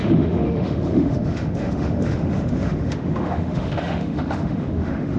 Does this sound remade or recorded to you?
remade